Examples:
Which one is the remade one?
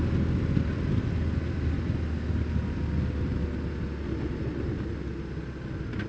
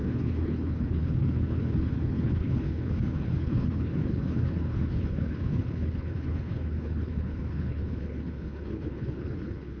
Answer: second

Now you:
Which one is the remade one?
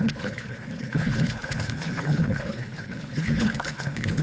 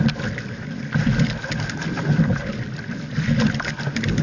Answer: first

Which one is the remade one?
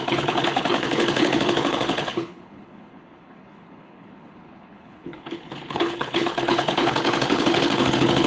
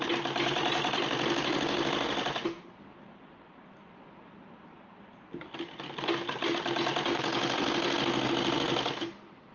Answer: first